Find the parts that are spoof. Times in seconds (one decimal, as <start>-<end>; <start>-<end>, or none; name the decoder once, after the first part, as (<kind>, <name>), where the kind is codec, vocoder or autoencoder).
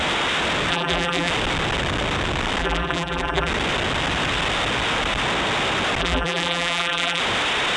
0.7-1.3 (vocoder, BigVGAN v2); 2.6-3.5; 6.0-7.2